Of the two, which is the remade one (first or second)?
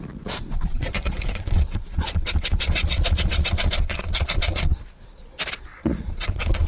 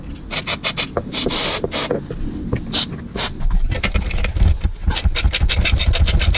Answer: first